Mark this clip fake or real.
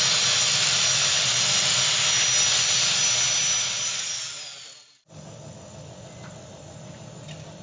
real